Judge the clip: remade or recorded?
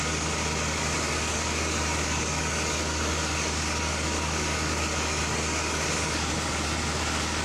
remade